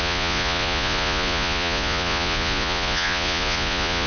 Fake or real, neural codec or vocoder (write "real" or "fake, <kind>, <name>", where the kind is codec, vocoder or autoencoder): fake, vocoder, Vocos